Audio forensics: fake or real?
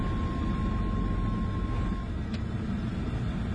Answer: real